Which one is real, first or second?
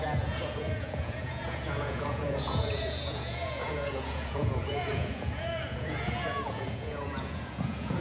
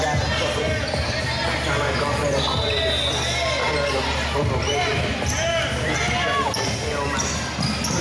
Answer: second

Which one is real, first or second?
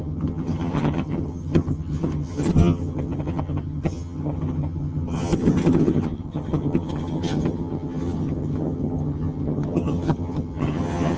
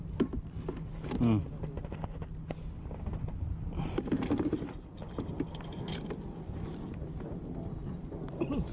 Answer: second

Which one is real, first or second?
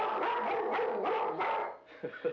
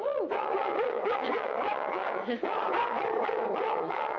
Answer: first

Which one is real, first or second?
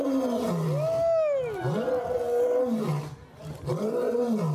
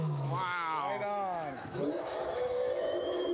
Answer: first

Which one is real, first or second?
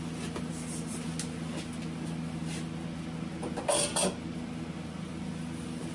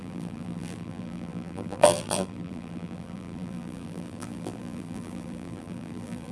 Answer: first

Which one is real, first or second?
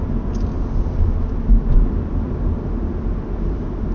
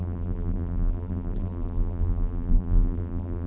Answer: first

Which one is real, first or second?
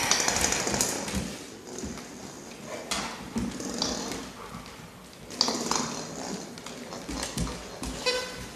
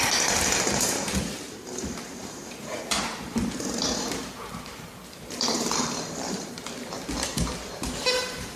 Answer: first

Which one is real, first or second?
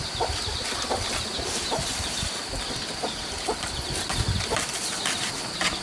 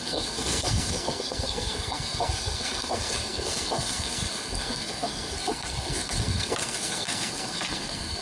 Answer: first